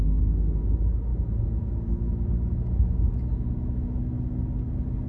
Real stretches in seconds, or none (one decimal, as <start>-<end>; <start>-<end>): 0.0-1.1; 4.2-5.1